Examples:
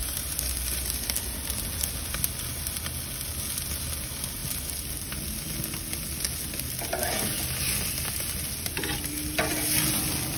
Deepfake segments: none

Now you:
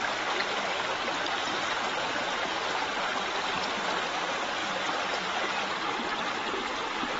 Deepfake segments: none

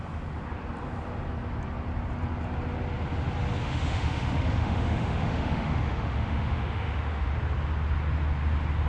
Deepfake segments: 3.6-7.3 (autoencoder, DAC-VAE)

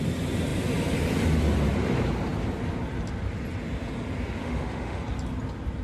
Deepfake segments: 4.4-5.0 (autoencoder, DAC-VAE)

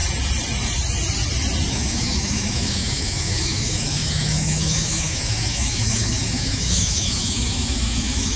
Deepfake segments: 1.7-8.4 (autoencoder, DAC-VAE)

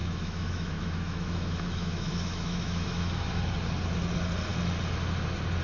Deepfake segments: 0.0-3.4 (autoencoder, DAC-VAE)